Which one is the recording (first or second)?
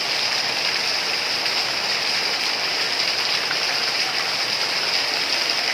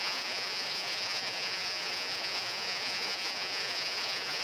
first